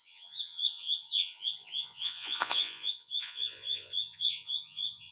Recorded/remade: remade